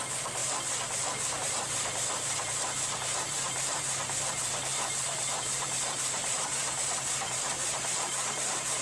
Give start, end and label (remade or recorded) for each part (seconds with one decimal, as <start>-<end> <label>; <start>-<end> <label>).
0.0-0.4 remade; 0.4-1.3 recorded; 1.3-8.8 remade